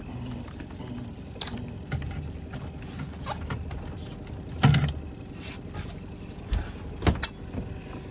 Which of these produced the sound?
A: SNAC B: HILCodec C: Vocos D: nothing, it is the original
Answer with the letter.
D